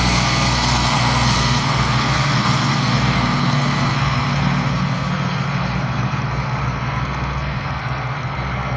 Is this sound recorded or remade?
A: remade